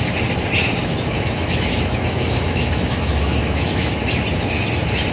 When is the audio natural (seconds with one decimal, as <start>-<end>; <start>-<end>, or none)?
0.0-0.8; 3.9-5.1